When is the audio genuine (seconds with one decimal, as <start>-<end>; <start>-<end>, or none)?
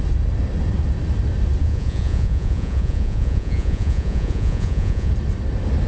0.0-1.6; 5.1-5.9